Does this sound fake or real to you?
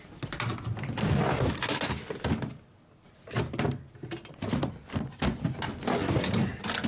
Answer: real